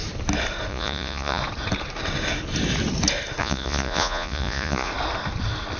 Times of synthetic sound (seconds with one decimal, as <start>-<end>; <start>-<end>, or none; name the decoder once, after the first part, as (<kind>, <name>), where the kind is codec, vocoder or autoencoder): 0.7-1.4 (vocoder, Vocos); 3.4-4.9